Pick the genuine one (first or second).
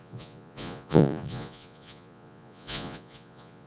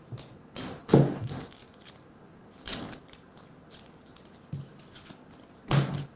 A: second